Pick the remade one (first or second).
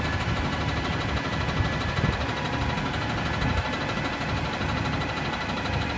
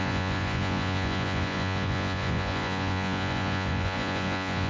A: second